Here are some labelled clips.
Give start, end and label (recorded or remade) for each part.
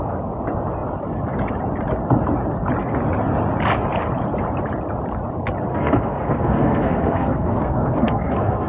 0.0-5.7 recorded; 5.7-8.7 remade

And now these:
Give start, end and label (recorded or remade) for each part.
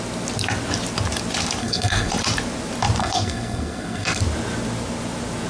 0.0-1.6 recorded; 1.6-2.1 remade; 2.1-3.0 recorded; 3.0-4.2 remade; 4.2-5.5 recorded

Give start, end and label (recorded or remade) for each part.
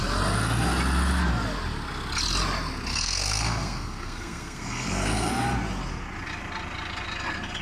0.0-2.9 recorded; 2.9-5.3 remade; 5.3-7.6 recorded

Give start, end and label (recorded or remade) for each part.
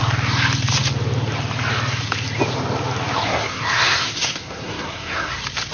0.0-3.3 recorded; 3.3-5.3 remade; 5.3-5.7 recorded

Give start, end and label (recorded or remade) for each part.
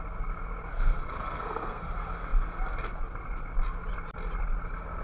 0.0-0.7 recorded; 0.7-1.9 remade; 1.9-5.0 recorded